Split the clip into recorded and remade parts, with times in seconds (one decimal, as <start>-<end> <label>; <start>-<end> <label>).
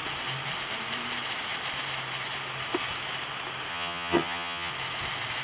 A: 0.0-3.7 recorded; 3.7-4.7 remade; 4.7-5.4 recorded